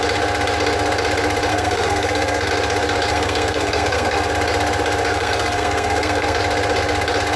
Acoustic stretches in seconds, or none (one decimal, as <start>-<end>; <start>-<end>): 0.0-1.5; 2.5-3.1; 4.3-5.1; 6.4-7.4